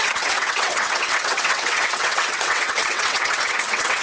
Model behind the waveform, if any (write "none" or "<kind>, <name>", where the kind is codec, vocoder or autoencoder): vocoder, WaveNeXt